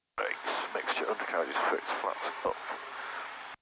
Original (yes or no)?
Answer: yes